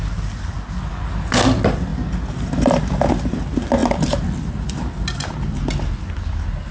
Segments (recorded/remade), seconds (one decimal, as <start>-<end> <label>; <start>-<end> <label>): 0.0-6.7 recorded